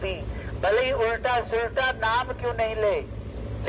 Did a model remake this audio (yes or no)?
no